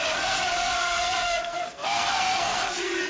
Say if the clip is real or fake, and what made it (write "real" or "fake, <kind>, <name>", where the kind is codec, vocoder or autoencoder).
fake, codec, SNAC